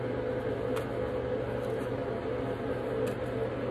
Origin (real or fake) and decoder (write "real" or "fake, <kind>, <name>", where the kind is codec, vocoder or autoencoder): real